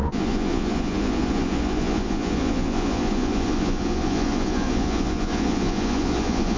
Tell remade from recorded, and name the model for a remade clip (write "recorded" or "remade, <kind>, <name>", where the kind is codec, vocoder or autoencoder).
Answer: remade, vocoder, Vocos